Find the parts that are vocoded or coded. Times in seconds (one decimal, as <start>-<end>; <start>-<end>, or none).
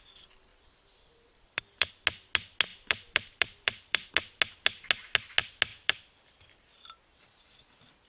0.5-1.9; 2.7-4.1; 5.7-7.0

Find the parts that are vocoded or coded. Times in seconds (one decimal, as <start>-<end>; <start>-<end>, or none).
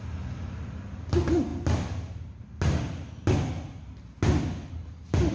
none